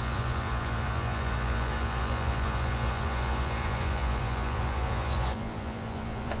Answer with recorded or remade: remade